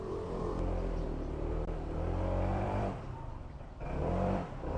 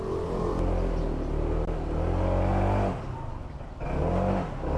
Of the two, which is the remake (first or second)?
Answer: first